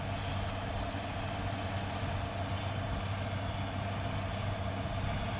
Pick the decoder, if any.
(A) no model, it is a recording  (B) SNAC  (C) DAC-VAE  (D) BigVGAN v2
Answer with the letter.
A